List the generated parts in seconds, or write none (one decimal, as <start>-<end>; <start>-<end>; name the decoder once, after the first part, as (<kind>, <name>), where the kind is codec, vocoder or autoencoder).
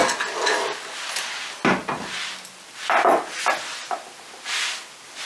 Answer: none